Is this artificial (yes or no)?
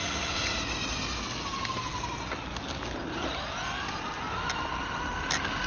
no